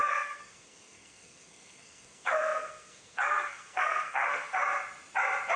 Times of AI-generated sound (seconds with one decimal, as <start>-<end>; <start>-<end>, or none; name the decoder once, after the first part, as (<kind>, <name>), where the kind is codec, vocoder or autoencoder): 0.0-4.6 (codec, SNAC)